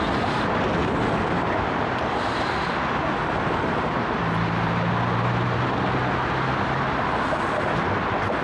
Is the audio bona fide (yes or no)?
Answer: yes